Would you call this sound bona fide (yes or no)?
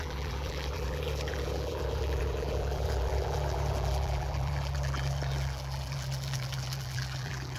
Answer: no